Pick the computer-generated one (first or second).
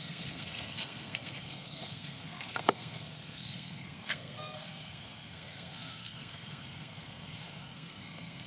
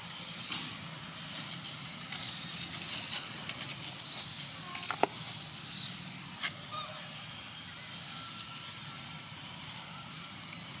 first